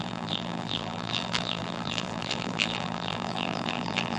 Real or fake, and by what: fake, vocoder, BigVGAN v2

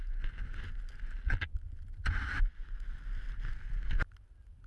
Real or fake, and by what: real